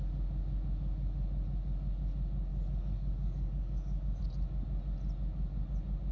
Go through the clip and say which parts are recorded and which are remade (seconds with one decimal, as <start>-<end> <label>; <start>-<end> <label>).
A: 0.0-2.5 recorded; 2.5-4.2 remade; 4.2-6.1 recorded